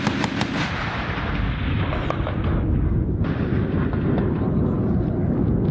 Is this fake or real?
real